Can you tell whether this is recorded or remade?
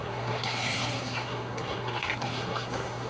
remade